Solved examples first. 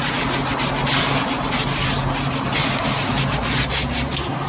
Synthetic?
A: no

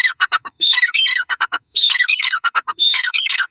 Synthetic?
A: yes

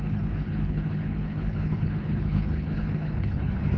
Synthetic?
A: yes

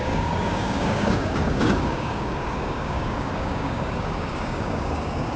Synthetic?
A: yes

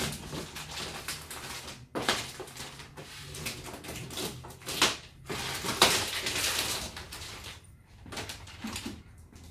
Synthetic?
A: yes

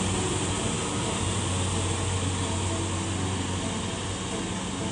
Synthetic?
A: no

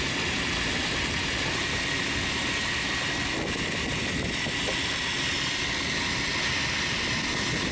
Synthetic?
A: no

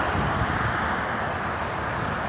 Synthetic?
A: no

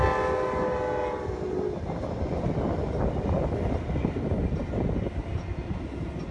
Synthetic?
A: no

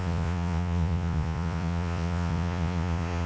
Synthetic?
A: yes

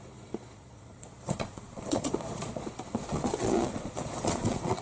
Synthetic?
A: yes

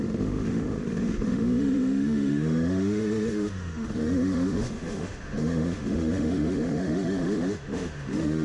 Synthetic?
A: yes